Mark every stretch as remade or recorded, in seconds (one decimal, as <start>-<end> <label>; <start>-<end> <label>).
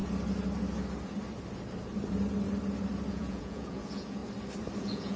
0.0-3.1 recorded; 3.1-4.2 remade; 4.2-4.8 recorded; 4.8-5.2 remade